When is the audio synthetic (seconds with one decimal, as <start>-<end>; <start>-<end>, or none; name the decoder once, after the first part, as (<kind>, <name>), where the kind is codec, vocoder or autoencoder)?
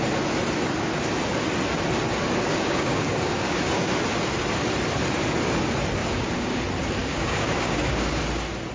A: 2.5-3.9 (codec, DAC); 6.0-6.6; 7.0-8.2